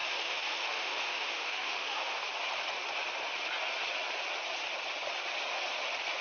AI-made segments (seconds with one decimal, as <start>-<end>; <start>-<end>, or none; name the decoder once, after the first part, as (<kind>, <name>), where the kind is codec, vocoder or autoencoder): 0.0-2.1 (autoencoder, DAC-VAE)